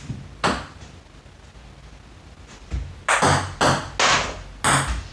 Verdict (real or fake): real